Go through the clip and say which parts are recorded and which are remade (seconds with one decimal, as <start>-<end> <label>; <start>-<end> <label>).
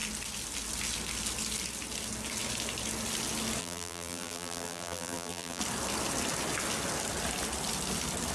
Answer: 0.0-3.6 recorded; 3.6-5.6 remade; 5.6-8.3 recorded